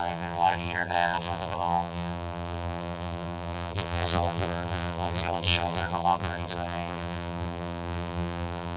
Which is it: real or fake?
fake